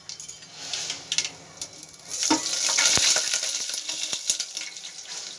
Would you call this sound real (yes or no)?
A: yes